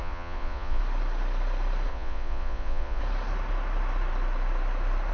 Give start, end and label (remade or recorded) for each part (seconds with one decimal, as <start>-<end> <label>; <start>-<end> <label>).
0.0-0.8 remade; 0.8-1.9 recorded; 1.9-3.0 remade; 3.0-5.1 recorded